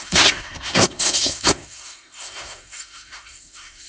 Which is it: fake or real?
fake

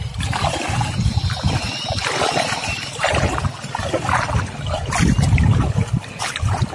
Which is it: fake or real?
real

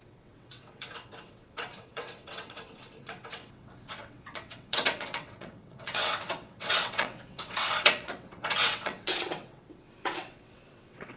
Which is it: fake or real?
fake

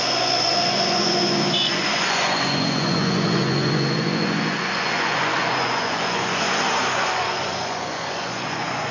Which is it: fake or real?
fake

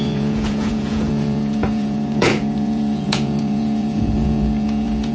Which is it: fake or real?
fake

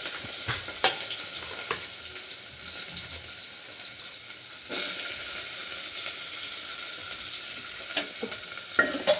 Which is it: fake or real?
real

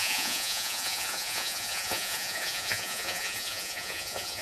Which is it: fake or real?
fake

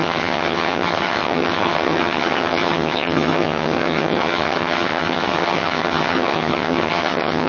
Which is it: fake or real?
fake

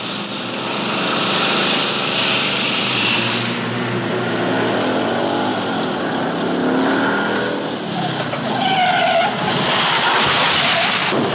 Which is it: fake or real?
real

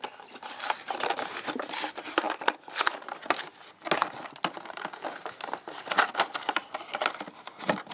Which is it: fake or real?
real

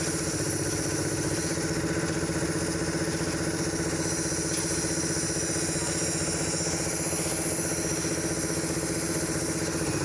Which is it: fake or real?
real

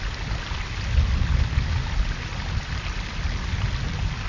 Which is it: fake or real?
real